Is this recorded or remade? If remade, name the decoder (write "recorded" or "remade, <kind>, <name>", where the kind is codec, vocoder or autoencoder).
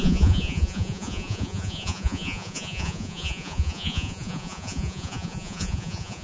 remade, vocoder, Vocos